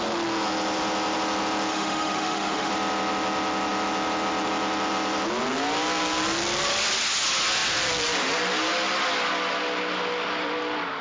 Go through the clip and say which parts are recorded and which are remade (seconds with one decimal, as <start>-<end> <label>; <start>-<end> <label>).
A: 0.0-1.7 recorded; 1.7-2.7 remade; 2.7-11.0 recorded